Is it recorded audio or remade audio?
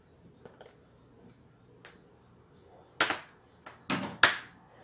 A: recorded